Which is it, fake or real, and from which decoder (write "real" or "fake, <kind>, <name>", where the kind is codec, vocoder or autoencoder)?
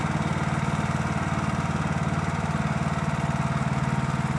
real